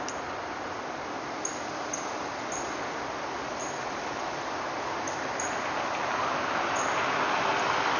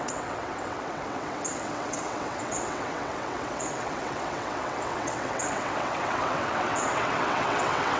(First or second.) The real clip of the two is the first